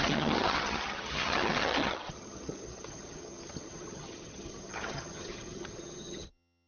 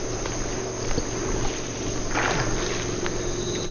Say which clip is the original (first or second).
second